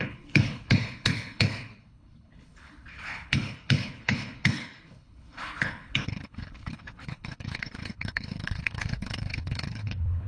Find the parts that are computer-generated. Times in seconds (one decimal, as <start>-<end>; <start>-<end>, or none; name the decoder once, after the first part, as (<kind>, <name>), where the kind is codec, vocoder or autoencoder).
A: 0.0-10.3 (codec, HILCodec)